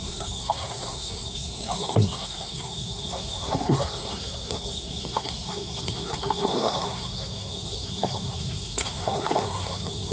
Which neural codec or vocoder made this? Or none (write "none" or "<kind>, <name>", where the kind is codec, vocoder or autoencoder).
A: codec, SNAC